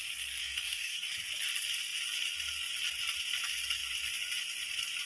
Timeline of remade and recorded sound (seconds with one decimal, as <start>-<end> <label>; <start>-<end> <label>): 0.0-0.4 recorded; 0.4-1.1 remade; 1.1-5.0 recorded